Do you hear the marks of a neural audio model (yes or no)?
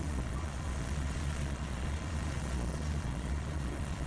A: yes